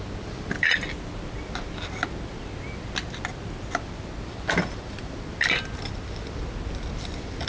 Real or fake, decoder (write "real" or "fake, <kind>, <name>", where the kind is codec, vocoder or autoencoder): real